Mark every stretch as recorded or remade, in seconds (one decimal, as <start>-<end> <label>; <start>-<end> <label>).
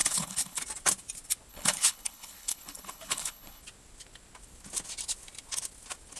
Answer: 0.0-0.6 remade; 0.6-1.5 recorded; 1.5-3.6 remade; 3.6-6.2 recorded